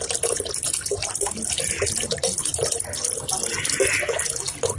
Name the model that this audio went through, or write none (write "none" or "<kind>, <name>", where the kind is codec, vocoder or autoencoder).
none